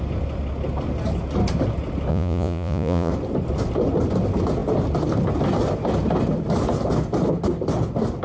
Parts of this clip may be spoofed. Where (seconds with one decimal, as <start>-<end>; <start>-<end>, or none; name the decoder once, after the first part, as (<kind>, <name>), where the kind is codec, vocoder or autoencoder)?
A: 2.1-3.1 (vocoder, Vocos)